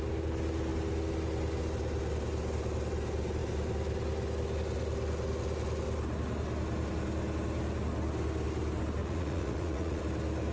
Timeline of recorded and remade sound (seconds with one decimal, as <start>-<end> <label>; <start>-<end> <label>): 0.0-9.0 recorded; 9.0-10.0 remade; 10.0-10.5 recorded